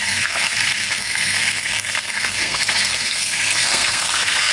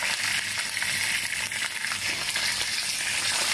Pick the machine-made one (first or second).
first